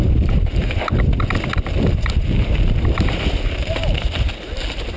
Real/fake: fake